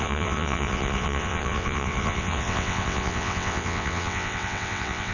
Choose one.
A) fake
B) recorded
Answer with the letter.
A